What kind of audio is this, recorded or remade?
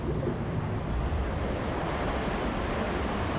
recorded